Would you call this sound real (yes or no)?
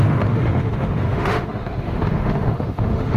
no